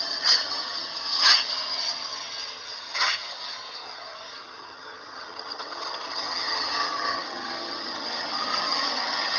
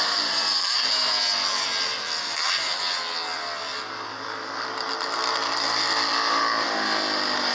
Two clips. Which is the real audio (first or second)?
second